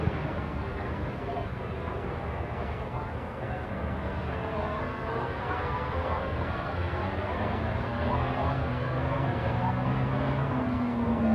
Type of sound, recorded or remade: remade